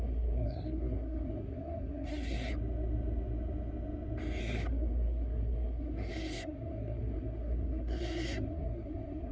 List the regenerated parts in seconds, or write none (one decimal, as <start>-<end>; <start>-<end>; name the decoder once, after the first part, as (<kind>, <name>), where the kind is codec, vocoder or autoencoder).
0.0-2.5 (codec, SNAC); 4.4-9.3

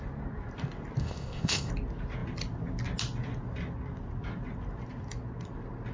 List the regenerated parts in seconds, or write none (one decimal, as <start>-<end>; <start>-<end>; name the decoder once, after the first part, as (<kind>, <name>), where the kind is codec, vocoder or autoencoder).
1.0-1.7 (codec, ZipCodec)

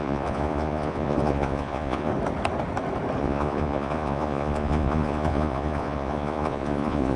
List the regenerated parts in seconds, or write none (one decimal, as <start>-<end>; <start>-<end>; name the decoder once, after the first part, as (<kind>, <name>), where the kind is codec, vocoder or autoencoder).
0.0-2.1 (vocoder, Vocos); 3.2-7.2